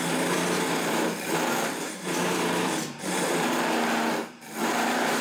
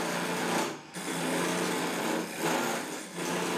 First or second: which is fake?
first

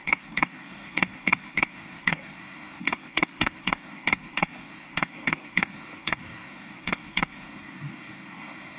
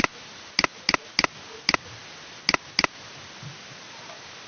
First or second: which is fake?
first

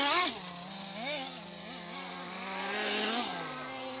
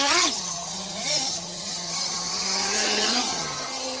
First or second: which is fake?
second